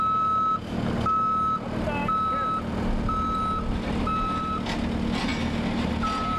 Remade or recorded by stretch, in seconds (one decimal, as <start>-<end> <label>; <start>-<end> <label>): 0.0-6.4 recorded